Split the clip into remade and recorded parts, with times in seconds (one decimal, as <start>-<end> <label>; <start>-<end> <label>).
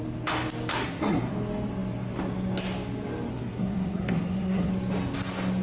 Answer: 0.0-0.7 recorded; 0.7-1.3 remade; 1.3-3.3 recorded; 3.3-4.7 remade; 4.7-5.6 recorded